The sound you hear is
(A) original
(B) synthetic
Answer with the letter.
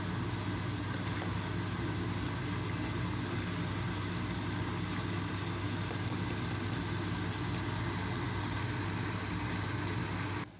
A